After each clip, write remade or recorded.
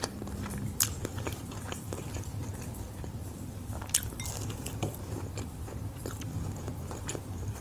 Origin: remade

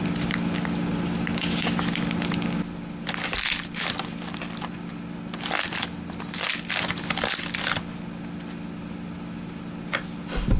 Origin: recorded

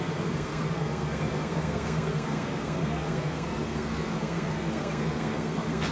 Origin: remade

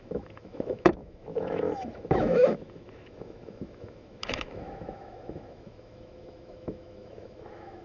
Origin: remade